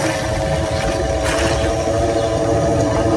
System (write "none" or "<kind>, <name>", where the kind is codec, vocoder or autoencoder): none